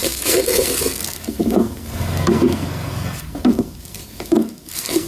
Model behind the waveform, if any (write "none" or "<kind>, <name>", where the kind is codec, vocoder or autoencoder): codec, SNAC